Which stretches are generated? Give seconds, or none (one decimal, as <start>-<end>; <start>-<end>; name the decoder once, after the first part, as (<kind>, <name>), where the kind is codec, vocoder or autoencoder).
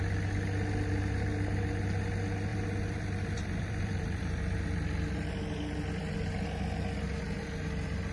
2.5-5.3 (vocoder, BigVGAN v2)